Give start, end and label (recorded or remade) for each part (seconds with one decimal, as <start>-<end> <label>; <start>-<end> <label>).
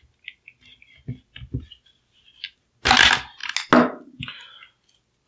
0.0-5.3 recorded